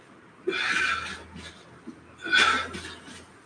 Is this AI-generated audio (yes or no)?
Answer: no